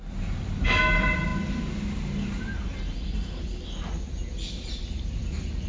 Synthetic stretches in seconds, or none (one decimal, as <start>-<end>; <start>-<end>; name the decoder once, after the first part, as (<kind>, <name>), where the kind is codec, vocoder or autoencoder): none